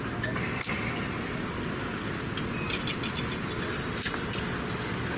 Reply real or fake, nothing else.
real